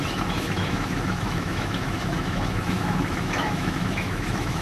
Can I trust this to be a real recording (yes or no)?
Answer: no